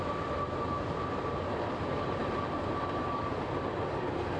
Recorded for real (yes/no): yes